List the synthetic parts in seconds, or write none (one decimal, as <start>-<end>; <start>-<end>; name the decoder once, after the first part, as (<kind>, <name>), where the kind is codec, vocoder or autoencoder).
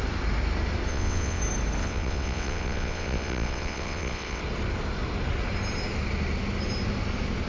0.9-1.4 (vocoder, WaveNeXt); 1.8-4.4